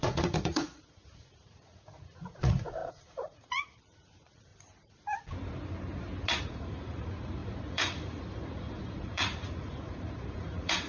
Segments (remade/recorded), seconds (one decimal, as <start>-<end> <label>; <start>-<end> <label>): 0.0-4.5 remade; 4.5-6.4 recorded; 6.4-10.9 remade